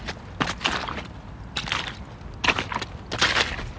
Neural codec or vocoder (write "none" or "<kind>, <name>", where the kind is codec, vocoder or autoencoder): none